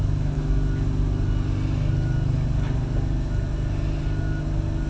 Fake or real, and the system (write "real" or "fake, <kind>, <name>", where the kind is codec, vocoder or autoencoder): real